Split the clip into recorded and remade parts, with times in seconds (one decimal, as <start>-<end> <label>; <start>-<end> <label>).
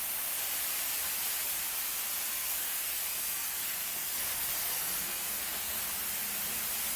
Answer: 0.0-2.3 recorded; 2.3-5.8 remade; 5.8-7.0 recorded